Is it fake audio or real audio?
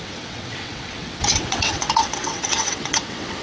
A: fake